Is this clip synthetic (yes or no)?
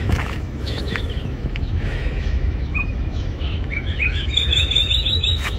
yes